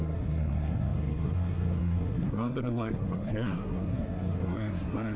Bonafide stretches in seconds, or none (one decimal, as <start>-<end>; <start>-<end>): none